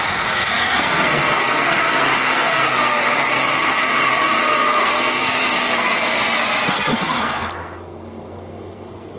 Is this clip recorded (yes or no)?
no